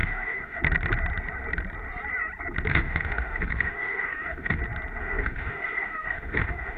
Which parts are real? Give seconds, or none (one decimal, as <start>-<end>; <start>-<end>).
0.6-2.7; 4.6-5.0